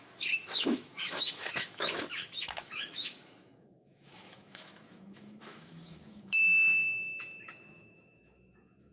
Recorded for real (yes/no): no